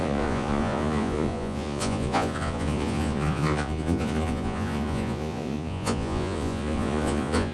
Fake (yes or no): yes